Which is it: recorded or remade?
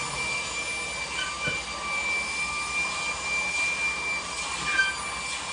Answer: recorded